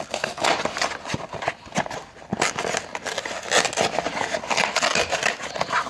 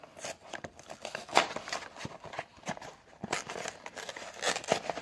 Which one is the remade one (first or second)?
second